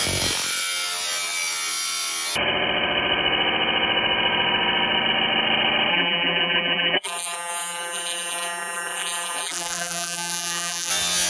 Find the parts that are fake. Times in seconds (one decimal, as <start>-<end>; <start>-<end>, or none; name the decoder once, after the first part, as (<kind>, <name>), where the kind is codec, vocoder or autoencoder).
5.9-10.9 (vocoder, BigVGAN v2)